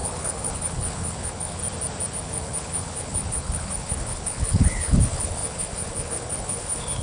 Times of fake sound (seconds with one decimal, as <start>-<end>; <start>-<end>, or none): 0.0-1.6; 2.1-7.0